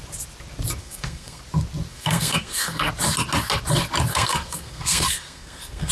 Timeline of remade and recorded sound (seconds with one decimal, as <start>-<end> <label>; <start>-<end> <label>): 0.0-0.8 recorded; 0.8-1.4 remade; 1.4-1.9 recorded; 1.9-2.9 remade; 2.9-4.1 recorded; 4.1-5.9 remade